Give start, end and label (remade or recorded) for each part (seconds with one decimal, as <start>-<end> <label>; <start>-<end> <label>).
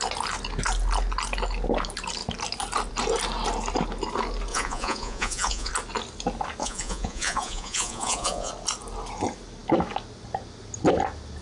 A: 0.0-4.5 recorded; 4.5-5.7 remade; 5.7-6.6 recorded; 6.6-8.5 remade; 8.5-11.4 recorded